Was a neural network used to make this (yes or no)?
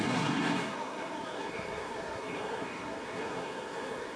yes